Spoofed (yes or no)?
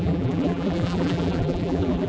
yes